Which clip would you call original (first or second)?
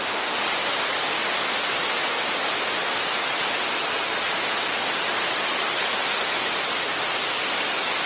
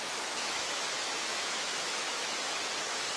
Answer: first